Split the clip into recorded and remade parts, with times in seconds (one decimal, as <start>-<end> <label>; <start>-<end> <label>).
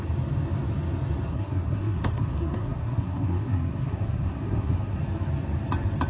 0.0-1.3 recorded; 1.3-5.0 remade; 5.0-6.1 recorded